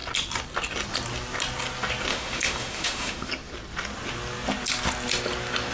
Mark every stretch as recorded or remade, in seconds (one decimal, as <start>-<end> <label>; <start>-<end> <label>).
0.0-2.1 recorded; 2.1-3.3 remade; 3.3-5.7 recorded

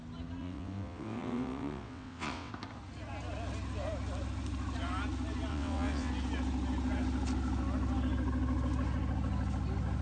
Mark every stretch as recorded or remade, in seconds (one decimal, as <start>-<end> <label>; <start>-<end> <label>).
0.0-0.4 recorded; 0.4-2.5 remade; 2.5-5.5 recorded; 5.5-6.1 remade; 6.1-10.0 recorded

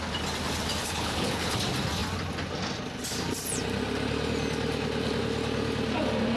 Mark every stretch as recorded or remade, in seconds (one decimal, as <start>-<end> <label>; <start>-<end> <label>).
0.0-0.8 recorded; 0.8-1.6 remade; 1.6-6.4 recorded

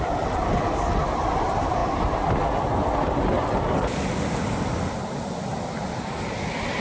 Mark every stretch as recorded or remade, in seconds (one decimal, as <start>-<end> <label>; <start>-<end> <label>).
0.0-6.8 recorded

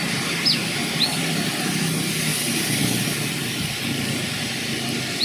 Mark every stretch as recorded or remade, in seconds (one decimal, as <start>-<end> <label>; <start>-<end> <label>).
0.0-5.2 recorded

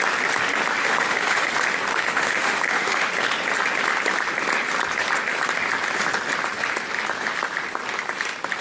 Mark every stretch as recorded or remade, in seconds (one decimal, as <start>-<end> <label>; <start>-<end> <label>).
0.0-0.8 recorded; 0.8-1.5 remade; 1.5-1.9 recorded; 1.9-3.1 remade; 3.1-8.6 recorded

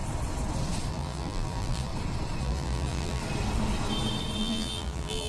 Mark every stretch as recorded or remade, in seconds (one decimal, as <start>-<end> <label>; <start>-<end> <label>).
0.0-0.9 recorded; 0.9-1.9 remade; 1.9-2.4 recorded; 2.4-3.2 remade; 3.2-4.4 recorded; 4.4-5.3 remade

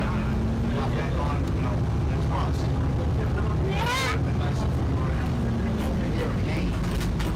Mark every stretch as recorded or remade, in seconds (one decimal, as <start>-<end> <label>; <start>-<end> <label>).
0.0-7.4 recorded